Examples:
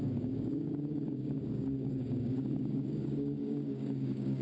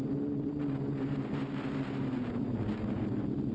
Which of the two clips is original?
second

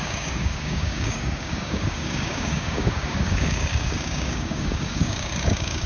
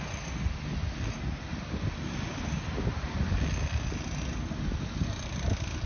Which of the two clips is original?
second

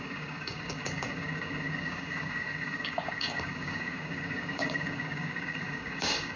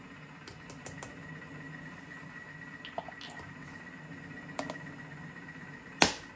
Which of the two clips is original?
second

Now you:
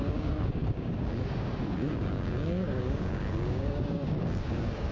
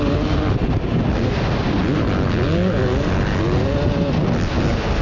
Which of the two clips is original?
second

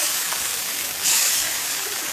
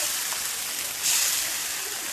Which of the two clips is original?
second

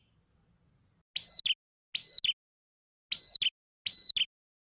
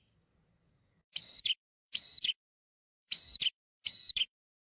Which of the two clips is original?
first